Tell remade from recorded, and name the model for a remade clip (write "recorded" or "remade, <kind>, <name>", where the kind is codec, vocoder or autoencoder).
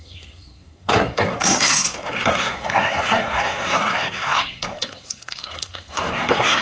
remade, codec, SNAC